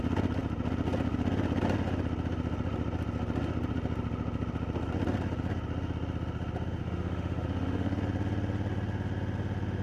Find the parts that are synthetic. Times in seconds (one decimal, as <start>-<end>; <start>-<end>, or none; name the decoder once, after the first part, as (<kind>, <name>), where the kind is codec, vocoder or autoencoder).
6.8-8.0 (autoencoder, DAC-VAE)